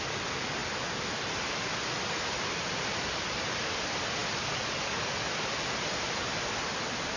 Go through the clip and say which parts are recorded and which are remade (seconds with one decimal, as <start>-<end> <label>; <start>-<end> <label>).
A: 0.0-7.2 recorded